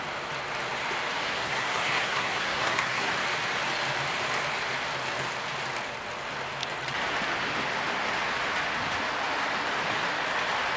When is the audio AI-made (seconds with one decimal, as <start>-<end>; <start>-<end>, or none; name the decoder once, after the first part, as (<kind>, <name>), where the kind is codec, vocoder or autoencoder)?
1.2-3.1 (codec, SNAC)